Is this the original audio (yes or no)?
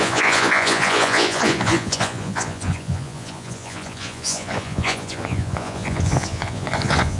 no